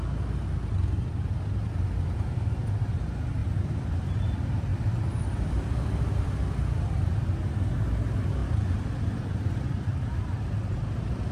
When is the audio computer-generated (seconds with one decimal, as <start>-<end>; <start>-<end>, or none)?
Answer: 3.4-3.9; 4.7-6.3; 8.4-9.3